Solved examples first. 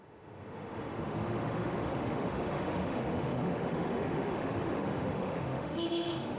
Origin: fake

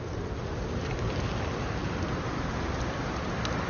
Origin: real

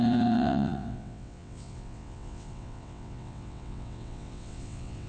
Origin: fake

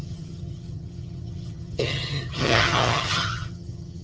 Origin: fake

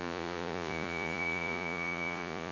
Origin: fake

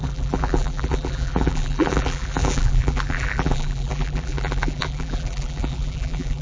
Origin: fake